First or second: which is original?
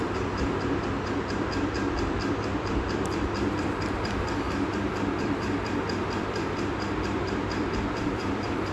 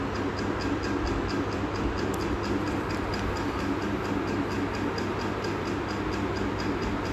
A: second